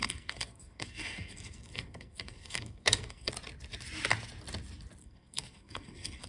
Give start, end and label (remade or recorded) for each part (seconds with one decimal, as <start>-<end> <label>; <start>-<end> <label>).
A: 0.0-3.3 remade; 3.3-5.0 recorded; 5.0-6.3 remade